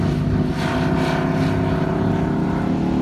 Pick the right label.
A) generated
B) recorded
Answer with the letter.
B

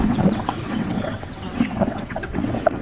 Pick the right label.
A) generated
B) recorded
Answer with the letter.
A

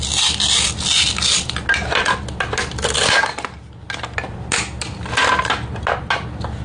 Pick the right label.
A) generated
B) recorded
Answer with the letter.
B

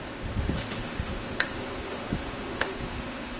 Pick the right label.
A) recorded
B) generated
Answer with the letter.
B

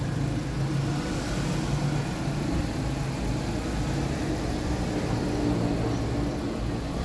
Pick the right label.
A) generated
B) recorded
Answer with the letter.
B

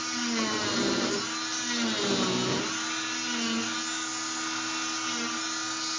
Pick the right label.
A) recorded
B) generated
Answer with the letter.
A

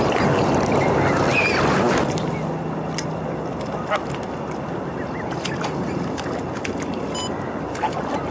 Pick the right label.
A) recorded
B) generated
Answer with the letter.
A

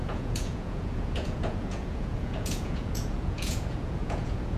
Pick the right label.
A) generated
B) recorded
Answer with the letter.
A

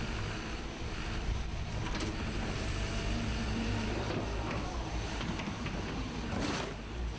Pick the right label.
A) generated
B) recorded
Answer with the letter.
A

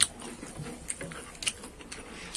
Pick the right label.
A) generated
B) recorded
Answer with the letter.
B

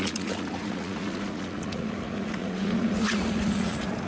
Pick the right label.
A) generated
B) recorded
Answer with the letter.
A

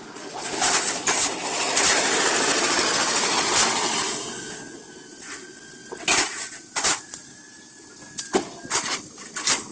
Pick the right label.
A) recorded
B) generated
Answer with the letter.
A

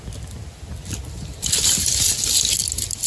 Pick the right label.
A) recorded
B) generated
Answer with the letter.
A